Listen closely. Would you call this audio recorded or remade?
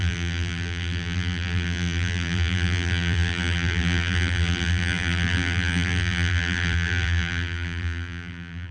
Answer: remade